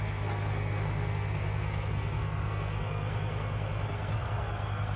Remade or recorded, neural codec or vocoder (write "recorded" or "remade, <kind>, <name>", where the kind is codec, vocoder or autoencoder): remade, codec, SNAC